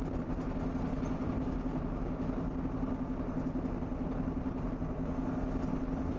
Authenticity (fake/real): real